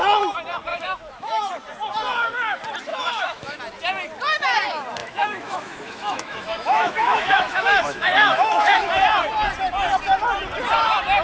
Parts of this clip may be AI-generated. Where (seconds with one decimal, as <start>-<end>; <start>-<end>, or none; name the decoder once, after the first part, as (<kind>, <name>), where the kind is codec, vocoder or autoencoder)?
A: 0.7-1.4 (autoencoder, DAC-VAE); 2.9-3.6; 5.0-8.9